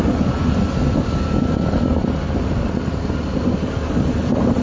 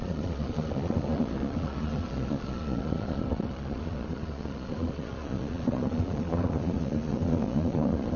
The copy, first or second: second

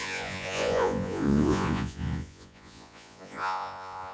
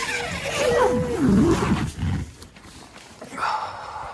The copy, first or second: first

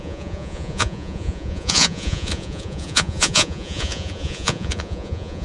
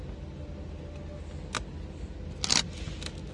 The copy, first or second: first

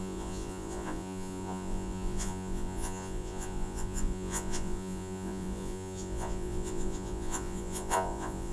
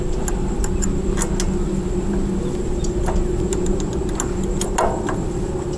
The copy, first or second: first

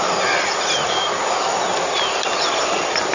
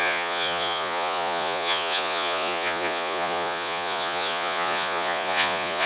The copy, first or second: second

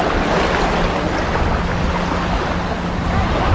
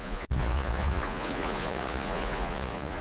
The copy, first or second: second